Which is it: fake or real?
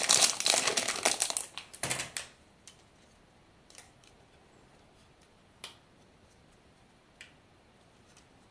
real